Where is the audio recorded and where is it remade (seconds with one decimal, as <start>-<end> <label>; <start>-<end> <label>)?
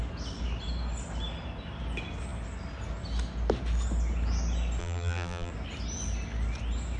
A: 0.0-4.8 recorded; 4.8-5.5 remade; 5.5-7.0 recorded